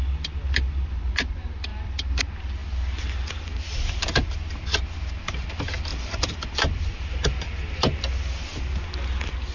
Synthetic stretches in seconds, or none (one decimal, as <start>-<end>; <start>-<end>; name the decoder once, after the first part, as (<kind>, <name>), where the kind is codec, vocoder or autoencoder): 1.7-2.2 (vocoder, BigVGAN v2); 5.9-7.5